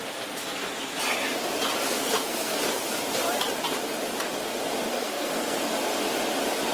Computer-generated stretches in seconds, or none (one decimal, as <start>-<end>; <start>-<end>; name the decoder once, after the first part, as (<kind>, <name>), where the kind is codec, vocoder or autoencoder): 1.9-2.6 (codec, SNAC); 4.9-5.6